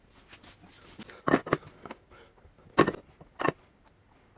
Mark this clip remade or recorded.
recorded